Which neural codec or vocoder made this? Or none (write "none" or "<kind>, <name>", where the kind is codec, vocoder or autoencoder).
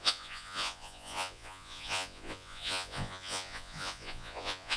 vocoder, Vocos